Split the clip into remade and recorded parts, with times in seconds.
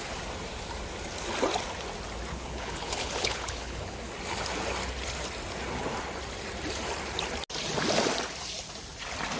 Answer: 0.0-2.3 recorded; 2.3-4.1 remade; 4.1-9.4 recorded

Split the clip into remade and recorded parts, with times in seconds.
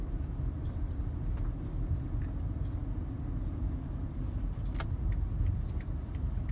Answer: 0.0-6.5 recorded